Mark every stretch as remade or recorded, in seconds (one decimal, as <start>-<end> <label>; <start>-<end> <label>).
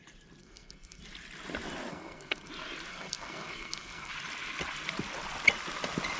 0.0-0.4 recorded; 0.4-1.0 remade; 1.0-1.9 recorded; 1.9-2.5 remade; 2.5-2.9 recorded; 2.9-4.1 remade; 4.1-6.2 recorded